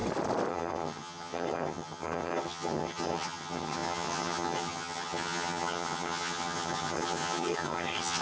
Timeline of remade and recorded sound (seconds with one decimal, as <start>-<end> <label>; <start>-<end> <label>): 0.0-0.5 recorded; 0.5-8.2 remade